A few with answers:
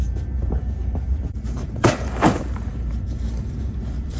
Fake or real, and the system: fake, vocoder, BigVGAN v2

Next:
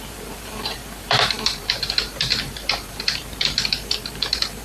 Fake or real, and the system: fake, vocoder, BigVGAN v2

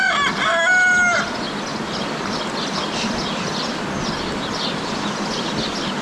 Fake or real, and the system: real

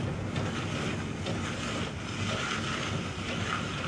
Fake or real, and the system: real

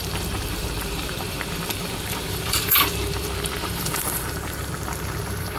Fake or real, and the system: fake, vocoder, BigVGAN v2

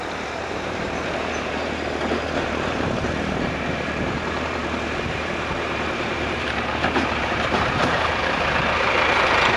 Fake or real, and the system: fake, vocoder, BigVGAN v2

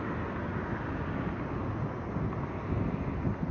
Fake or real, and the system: real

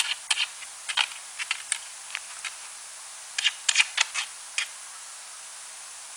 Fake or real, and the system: real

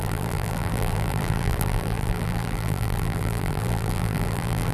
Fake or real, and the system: fake, vocoder, BigVGAN v2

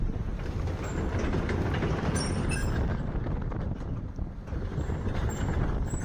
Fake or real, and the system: fake, vocoder, BigVGAN v2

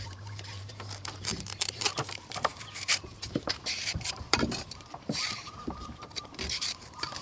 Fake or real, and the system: fake, vocoder, BigVGAN v2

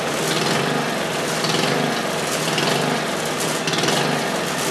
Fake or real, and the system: real